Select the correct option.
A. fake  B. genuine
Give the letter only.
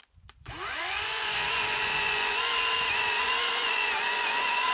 A